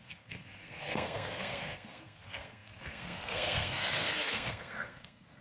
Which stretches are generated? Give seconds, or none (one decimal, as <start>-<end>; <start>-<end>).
0.0-5.4